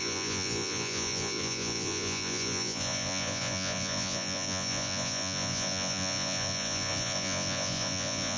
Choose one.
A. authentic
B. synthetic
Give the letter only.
B